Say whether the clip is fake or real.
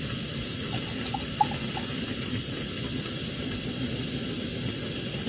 real